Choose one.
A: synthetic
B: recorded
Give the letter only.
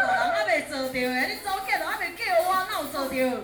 B